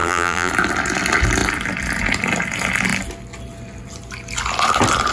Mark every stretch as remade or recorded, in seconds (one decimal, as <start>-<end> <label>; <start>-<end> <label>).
0.0-0.5 remade; 0.5-5.1 recorded